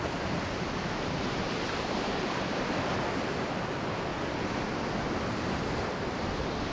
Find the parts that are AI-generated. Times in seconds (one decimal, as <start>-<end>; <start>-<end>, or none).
0.0-4.1